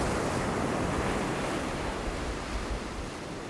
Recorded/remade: recorded